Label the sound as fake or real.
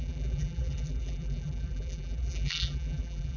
fake